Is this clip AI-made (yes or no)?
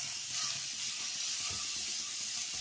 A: no